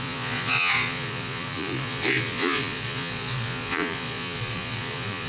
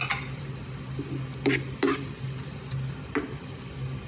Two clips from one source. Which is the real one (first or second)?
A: second